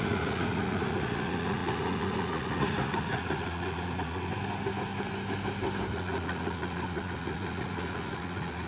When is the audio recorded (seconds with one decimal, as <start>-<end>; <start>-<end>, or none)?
4.3-5.9